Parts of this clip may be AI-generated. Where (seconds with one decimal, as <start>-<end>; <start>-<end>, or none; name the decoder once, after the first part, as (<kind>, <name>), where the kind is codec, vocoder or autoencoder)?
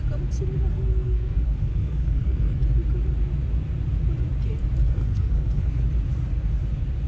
0.7-2.6 (codec, SNAC); 4.8-5.8